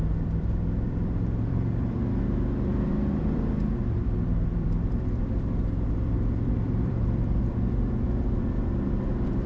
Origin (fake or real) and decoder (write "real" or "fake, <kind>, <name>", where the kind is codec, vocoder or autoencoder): fake, vocoder, BigVGAN v2